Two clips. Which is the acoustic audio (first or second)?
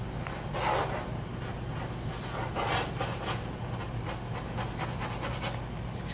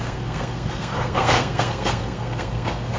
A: first